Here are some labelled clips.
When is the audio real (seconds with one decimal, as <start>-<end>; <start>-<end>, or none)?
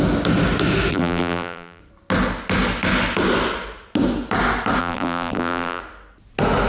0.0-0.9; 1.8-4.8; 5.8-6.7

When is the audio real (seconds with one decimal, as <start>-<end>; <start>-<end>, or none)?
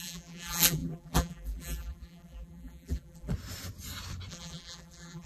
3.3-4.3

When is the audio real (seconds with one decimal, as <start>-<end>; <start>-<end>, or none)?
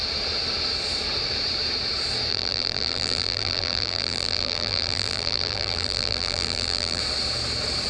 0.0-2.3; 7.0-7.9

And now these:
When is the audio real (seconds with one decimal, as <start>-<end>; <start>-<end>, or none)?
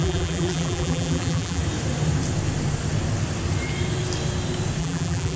1.6-4.8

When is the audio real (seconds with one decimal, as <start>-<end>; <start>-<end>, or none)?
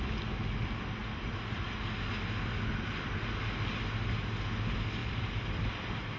0.0-5.0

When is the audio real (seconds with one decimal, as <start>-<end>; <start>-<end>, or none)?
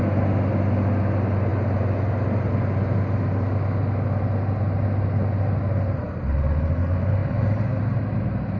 0.0-7.2; 7.8-8.6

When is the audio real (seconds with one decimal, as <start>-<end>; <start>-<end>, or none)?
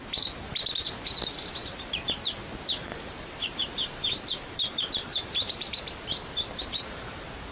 0.0-2.9; 6.3-7.5